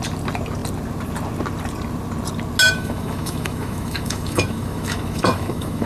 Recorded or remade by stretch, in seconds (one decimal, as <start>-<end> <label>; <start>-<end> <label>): 0.0-2.6 recorded; 2.6-5.9 remade